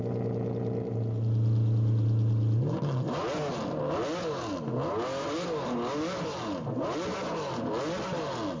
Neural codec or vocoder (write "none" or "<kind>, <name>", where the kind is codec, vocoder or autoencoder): none